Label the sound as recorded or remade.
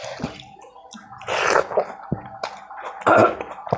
recorded